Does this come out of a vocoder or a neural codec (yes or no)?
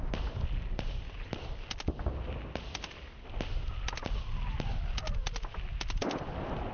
no